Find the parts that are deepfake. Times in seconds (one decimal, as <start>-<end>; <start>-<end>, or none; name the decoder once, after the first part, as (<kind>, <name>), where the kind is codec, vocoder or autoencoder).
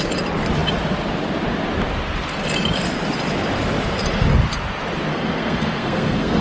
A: 5.1-6.4 (codec, SNAC)